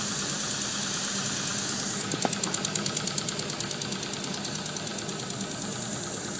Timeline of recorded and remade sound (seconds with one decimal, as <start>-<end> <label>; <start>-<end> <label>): 0.0-6.4 recorded